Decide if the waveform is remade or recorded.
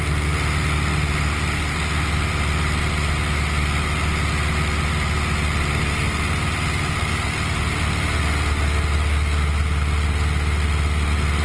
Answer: recorded